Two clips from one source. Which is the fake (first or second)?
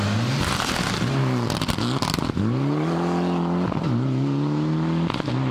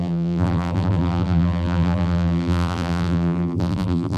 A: second